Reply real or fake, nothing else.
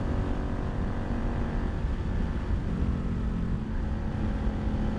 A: real